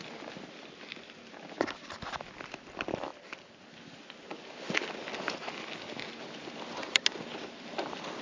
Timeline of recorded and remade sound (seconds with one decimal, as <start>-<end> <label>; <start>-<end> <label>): 0.0-8.2 recorded